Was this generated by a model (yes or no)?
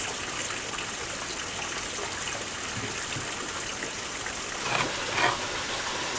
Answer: no